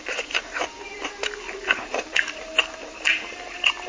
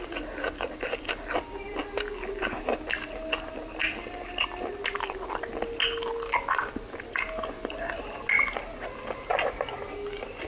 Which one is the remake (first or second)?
first